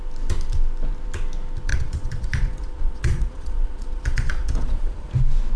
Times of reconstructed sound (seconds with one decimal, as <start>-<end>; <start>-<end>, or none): 1.7-5.1